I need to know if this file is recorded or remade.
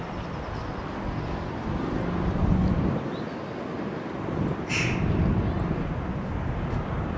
recorded